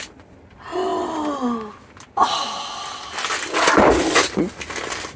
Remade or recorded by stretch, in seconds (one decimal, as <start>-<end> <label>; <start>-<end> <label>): 0.0-5.2 recorded